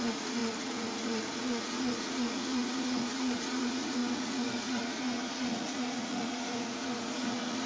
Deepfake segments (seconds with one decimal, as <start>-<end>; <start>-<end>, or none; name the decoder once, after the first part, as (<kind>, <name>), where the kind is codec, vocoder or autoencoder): 0.0-7.7 (vocoder, Vocos)